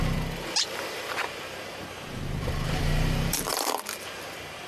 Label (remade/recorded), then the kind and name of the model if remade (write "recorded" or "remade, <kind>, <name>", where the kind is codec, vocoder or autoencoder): remade, vocoder, BigVGAN v2